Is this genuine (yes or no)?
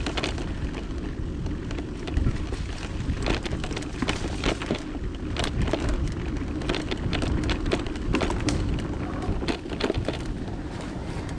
yes